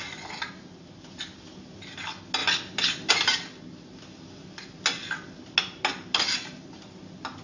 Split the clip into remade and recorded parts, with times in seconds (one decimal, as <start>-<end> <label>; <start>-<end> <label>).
0.0-7.4 recorded